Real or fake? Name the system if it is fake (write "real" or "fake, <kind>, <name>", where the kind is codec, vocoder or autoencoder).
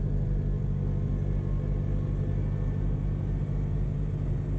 real